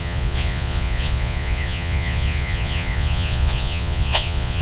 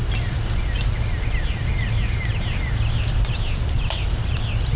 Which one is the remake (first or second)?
first